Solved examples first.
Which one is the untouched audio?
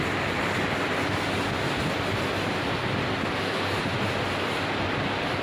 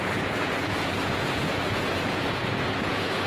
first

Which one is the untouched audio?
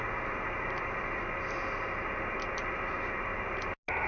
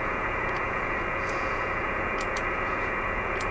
first